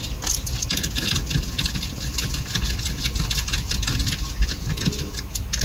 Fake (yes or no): no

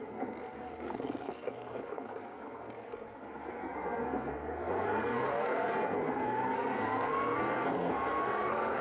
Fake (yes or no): yes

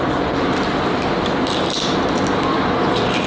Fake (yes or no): no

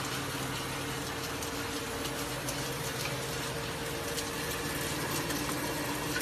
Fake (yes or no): no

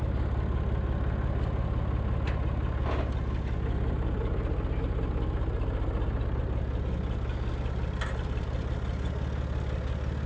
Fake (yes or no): no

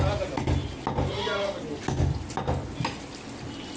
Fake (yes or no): no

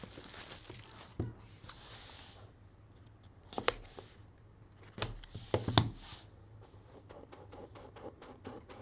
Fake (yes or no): no